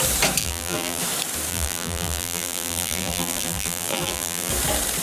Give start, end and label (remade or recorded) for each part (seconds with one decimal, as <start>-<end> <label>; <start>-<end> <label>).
0.0-0.4 recorded; 0.4-1.0 remade; 1.0-1.5 recorded; 1.5-4.5 remade; 4.5-5.0 recorded